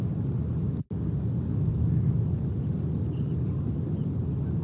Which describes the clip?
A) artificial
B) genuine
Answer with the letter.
B